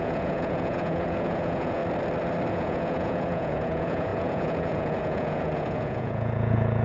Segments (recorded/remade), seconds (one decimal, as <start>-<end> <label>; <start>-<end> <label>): 0.0-1.8 remade; 1.8-2.5 recorded; 2.5-6.8 remade

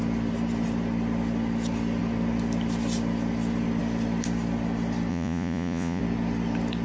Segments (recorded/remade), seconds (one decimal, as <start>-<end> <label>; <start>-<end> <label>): 0.0-5.1 recorded; 5.1-6.0 remade; 6.0-6.8 recorded

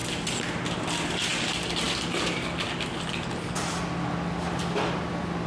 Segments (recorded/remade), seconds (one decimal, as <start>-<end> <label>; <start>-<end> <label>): 0.0-5.5 recorded

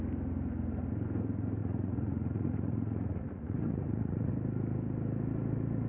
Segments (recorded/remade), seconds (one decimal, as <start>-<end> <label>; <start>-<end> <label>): 0.0-1.6 recorded; 1.6-4.3 remade; 4.3-5.9 recorded

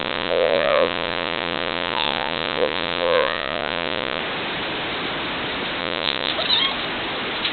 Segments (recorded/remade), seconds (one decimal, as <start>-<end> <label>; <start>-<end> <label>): 0.0-4.2 remade; 4.2-5.8 recorded; 5.8-6.3 remade; 6.3-7.5 recorded

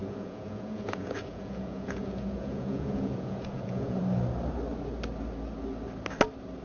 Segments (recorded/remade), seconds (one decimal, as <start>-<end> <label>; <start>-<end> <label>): 0.0-4.0 remade; 4.0-6.6 recorded